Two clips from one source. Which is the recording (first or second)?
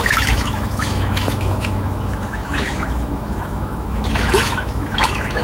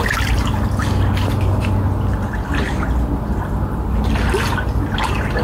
second